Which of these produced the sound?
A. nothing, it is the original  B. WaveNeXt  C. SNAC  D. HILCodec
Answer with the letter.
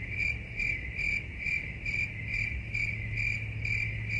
A